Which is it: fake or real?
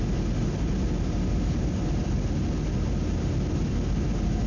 real